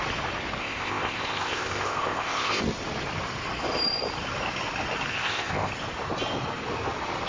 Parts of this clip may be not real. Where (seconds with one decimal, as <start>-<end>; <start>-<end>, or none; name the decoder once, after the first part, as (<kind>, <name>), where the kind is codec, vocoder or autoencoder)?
0.6-2.6 (codec, ZipCodec); 5.1-5.7